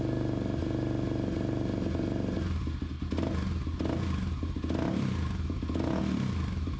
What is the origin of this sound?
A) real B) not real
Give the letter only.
A